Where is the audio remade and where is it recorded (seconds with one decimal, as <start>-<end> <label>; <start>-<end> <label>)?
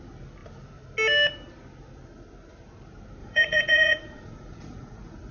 0.0-3.2 recorded; 3.2-5.3 remade